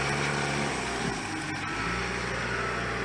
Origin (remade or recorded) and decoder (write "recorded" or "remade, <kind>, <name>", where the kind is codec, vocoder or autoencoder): recorded